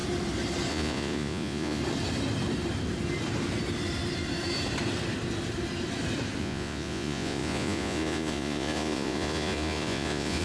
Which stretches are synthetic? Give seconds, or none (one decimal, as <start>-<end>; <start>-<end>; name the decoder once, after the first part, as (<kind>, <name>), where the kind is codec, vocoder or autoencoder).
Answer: 0.7-1.8 (vocoder, Vocos); 6.4-10.4